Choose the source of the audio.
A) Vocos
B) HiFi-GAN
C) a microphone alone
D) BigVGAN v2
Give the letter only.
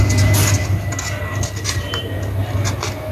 C